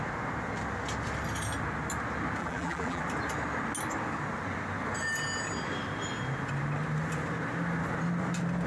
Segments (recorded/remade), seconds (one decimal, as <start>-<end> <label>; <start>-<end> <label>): 0.0-2.4 recorded; 2.4-3.0 remade; 3.0-8.7 recorded